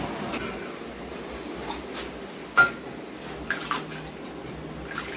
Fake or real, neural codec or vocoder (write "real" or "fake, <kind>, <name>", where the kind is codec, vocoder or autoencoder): real